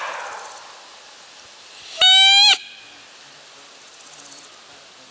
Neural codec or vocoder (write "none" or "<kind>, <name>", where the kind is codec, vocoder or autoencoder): none